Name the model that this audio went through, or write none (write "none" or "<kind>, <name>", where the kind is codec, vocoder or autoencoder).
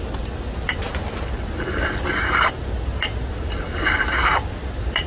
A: none